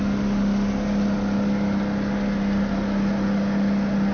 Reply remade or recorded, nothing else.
recorded